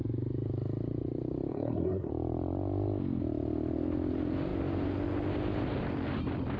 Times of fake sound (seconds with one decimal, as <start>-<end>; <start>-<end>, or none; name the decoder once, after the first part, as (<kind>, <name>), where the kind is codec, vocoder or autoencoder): 1.5-2.1 (codec, SNAC)